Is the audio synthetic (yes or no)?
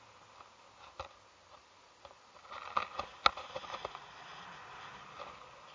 no